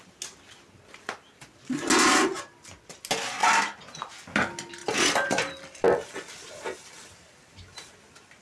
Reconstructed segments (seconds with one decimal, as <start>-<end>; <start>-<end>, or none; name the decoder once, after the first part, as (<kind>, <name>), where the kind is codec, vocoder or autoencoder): 4.8-7.9 (vocoder, BigVGAN v2)